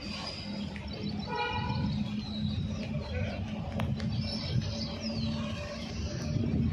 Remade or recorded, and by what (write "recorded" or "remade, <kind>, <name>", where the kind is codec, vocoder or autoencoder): recorded